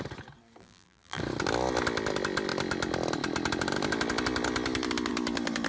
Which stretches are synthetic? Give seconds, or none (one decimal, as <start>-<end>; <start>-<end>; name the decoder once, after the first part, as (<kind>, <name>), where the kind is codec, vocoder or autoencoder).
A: 0.6-1.2 (vocoder, BigVGAN v2)